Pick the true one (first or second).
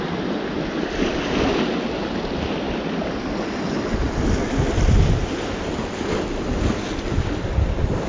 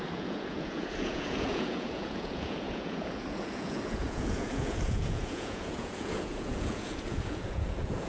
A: first